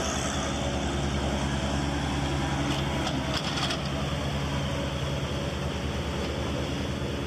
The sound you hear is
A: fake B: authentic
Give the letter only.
B